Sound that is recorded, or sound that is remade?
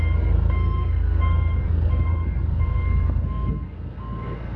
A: remade